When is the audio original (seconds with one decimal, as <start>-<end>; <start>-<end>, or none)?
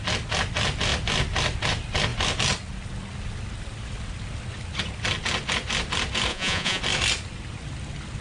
0.0-6.3; 6.8-8.2